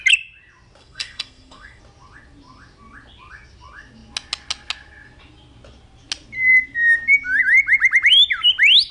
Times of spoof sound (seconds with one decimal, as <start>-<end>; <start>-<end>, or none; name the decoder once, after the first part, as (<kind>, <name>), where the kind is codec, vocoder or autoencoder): 0.8-1.8 (codec, SNAC)